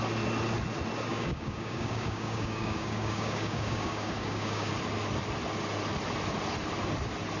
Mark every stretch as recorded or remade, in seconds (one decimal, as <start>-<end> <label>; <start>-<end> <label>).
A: 0.0-1.1 recorded; 1.1-4.7 remade; 4.7-7.4 recorded